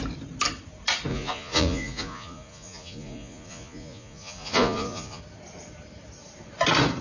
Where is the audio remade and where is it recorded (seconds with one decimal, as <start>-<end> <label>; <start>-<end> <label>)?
0.0-1.1 recorded; 1.1-5.2 remade; 5.2-7.0 recorded